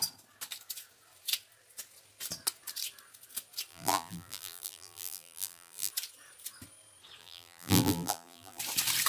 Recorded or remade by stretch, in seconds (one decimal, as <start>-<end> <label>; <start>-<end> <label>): 0.0-3.7 recorded; 3.7-5.9 remade; 5.9-7.2 recorded; 7.2-8.6 remade; 8.6-9.1 recorded